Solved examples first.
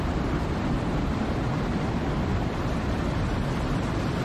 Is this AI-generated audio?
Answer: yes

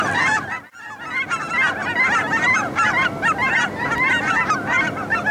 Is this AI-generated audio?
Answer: no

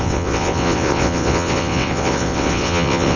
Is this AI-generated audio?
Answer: yes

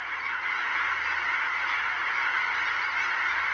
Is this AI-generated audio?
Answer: no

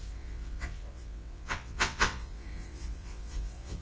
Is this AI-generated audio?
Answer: yes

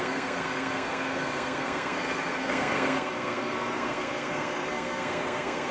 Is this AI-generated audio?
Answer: yes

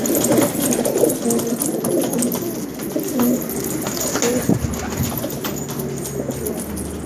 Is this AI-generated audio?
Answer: no